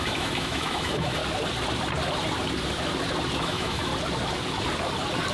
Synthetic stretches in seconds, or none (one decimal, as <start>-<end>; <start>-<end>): 0.0-1.2; 3.4-3.9